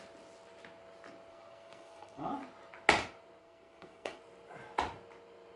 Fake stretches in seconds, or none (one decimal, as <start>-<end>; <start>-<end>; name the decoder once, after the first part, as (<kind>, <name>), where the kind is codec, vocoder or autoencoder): 1.3-2.3 (codec, SNAC); 3.4-4.2